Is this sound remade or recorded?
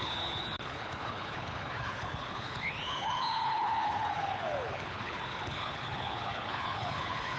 remade